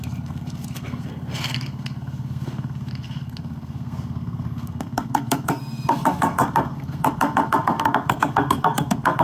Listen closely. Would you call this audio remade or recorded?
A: remade